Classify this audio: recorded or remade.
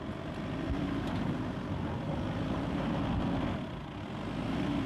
remade